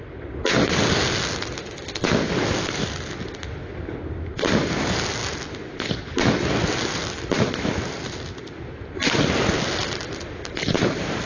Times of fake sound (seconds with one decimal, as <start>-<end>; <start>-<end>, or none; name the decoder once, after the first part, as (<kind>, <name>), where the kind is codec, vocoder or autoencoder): none